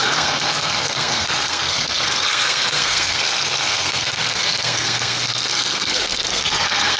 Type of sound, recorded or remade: remade